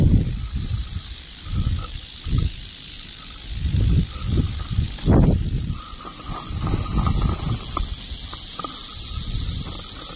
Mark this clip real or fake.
real